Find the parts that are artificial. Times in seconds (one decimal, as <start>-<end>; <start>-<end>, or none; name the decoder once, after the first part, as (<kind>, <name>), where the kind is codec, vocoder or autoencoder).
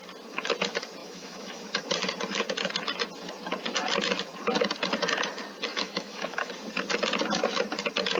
1.0-1.6 (autoencoder, DAC-VAE); 5.7-6.5